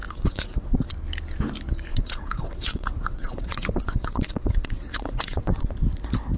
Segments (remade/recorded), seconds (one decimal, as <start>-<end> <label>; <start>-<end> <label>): 0.0-0.9 remade; 0.9-1.9 recorded; 1.9-5.7 remade; 5.7-6.4 recorded